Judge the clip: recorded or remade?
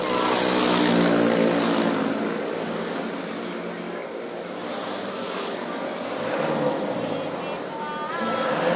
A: recorded